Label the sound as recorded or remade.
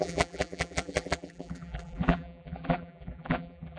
remade